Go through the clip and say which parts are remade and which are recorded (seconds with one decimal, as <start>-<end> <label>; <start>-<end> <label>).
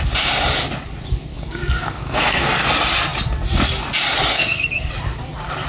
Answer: 0.0-1.3 recorded; 1.3-2.7 remade; 2.7-4.3 recorded; 4.3-4.9 remade; 4.9-5.7 recorded